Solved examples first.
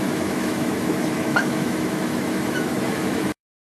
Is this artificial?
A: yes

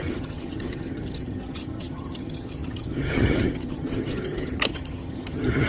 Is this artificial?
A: yes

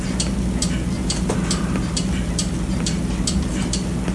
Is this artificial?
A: no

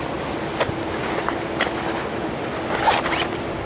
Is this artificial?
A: no